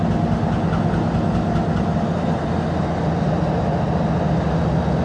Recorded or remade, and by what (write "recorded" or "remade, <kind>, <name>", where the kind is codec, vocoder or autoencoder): recorded